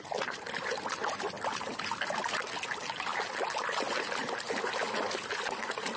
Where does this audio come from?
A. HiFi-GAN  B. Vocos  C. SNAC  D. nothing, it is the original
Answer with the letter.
D